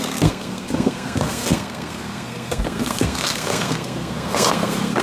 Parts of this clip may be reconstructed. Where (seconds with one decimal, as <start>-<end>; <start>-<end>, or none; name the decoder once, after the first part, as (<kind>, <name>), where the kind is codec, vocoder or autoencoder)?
0.0-5.0 (codec, SNAC)